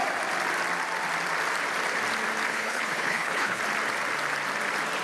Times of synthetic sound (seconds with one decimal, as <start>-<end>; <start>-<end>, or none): 2.5-3.6